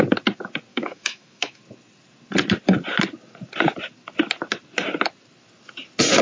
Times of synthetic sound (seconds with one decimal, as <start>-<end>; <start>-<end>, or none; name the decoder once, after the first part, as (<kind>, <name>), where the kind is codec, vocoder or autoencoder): 0.7-1.6 (autoencoder, DAC-VAE)

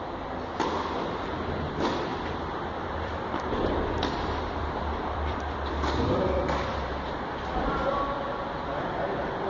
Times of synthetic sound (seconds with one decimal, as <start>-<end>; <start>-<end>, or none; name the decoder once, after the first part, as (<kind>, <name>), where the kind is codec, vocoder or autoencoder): 2.1-6.2 (vocoder, BigVGAN v2)

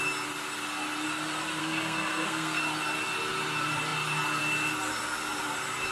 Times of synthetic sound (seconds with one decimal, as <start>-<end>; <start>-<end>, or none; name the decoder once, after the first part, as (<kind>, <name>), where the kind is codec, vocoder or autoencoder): 1.6-2.6 (codec, SNAC)

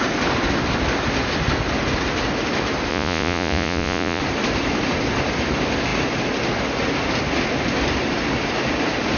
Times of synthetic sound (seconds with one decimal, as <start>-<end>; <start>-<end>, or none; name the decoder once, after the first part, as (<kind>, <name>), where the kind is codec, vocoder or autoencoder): 2.9-4.2 (vocoder, Vocos)